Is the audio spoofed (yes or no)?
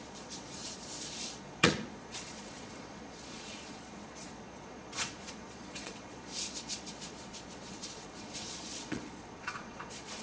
yes